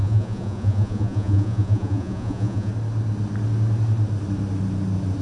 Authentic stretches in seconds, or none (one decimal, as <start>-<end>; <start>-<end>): 2.7-5.2